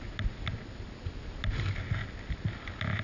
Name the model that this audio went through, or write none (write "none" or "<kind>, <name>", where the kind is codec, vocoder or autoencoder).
none